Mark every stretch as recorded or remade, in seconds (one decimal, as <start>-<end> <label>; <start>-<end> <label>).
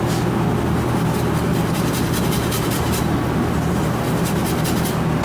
0.0-1.5 recorded; 1.5-3.0 remade; 3.0-5.2 recorded